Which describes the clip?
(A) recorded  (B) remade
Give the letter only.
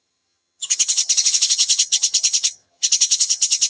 B